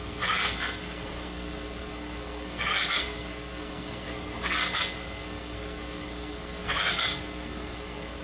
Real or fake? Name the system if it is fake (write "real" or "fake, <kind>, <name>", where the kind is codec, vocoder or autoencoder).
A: fake, codec, SNAC